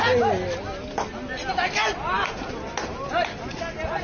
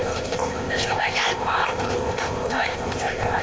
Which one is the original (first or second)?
first